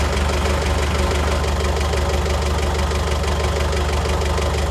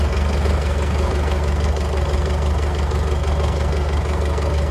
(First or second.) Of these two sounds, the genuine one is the first